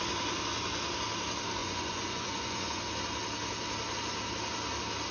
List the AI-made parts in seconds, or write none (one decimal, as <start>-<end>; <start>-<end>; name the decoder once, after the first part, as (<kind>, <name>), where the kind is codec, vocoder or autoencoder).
1.6-2.8 (vocoder, Vocos)